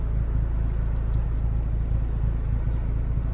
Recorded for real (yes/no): yes